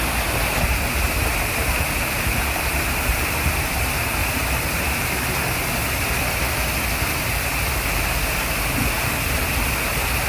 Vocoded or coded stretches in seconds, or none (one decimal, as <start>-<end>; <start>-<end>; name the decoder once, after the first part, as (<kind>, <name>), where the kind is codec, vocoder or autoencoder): 1.3-3.8 (vocoder, BigVGAN v2); 4.2-5.3